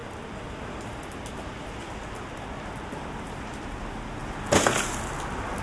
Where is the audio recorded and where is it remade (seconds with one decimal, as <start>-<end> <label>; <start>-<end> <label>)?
0.0-5.6 recorded